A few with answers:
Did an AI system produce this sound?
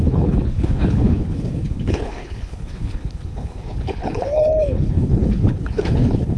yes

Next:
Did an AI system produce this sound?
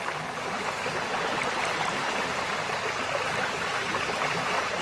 no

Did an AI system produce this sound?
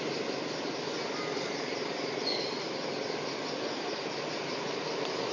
no